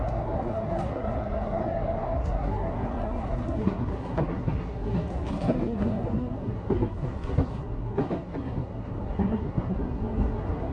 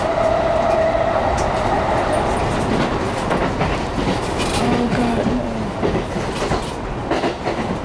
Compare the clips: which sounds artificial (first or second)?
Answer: first